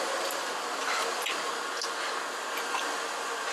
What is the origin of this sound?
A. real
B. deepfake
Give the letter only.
A